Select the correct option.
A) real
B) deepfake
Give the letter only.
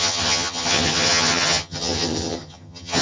B